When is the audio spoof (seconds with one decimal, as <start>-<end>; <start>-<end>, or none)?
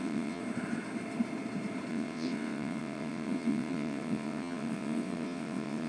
0.0-0.4; 1.9-5.9